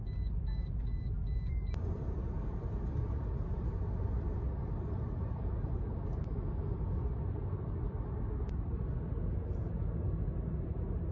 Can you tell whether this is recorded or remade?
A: recorded